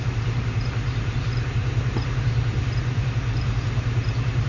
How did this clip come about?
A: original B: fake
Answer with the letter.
B